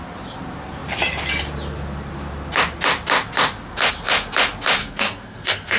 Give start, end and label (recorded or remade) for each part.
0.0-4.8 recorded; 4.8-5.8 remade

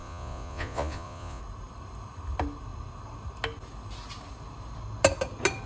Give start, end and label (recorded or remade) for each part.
0.0-1.4 remade; 1.4-5.7 recorded

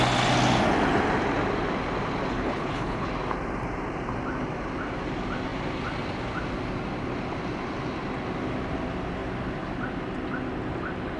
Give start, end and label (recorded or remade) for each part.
0.0-2.3 recorded; 2.3-3.1 remade; 3.1-11.2 recorded

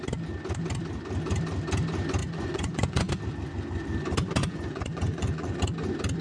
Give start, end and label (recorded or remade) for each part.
0.0-2.2 recorded; 2.2-3.1 remade; 3.1-4.4 recorded; 4.4-5.6 remade; 5.6-6.2 recorded

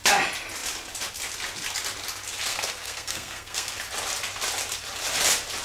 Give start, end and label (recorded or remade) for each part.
0.0-2.5 recorded; 2.5-3.7 remade; 3.7-5.6 recorded

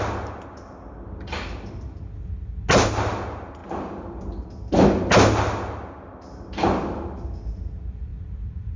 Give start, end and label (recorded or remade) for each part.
0.0-8.8 recorded

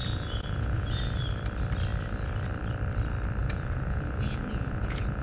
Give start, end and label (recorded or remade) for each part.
0.0-1.2 remade; 1.2-3.4 recorded; 3.4-5.2 remade

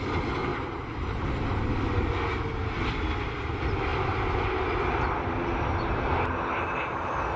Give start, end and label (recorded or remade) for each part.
0.0-0.5 recorded; 0.5-1.3 remade; 1.3-3.9 recorded; 3.9-4.8 remade; 4.8-7.4 recorded